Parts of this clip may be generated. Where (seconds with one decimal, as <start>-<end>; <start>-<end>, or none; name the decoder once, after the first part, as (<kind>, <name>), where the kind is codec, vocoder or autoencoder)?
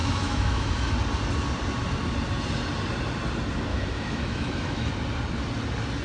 0.0-0.9 (autoencoder, DAC-VAE); 3.7-4.9